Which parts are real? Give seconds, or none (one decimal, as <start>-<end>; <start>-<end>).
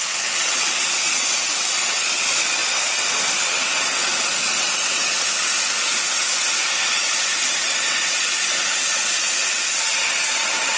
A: none